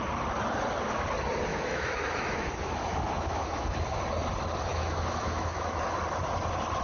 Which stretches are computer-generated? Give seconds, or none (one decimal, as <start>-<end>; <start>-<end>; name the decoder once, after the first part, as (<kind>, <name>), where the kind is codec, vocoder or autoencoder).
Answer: 1.5-4.0 (autoencoder, DAC-VAE); 4.7-5.8